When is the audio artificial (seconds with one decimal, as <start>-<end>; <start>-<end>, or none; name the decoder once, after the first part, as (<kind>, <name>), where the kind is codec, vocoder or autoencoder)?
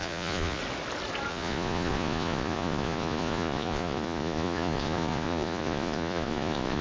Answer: 0.0-0.6 (vocoder, Vocos); 1.3-6.8